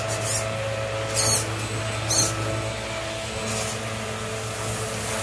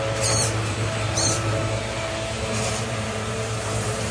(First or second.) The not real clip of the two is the second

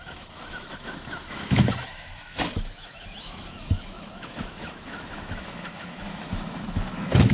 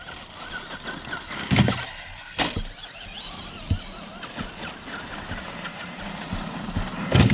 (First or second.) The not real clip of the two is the first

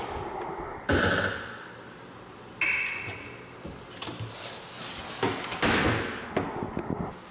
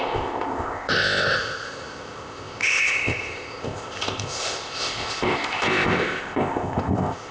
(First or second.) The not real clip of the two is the second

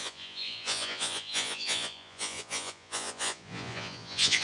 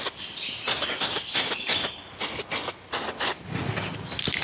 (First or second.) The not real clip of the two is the first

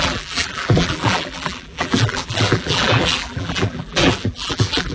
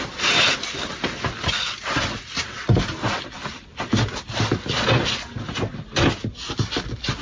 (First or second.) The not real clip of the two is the first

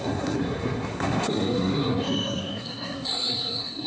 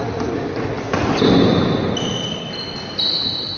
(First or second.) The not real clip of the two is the first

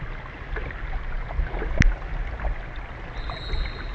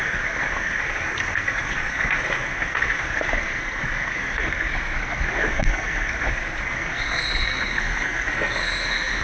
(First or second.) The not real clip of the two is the second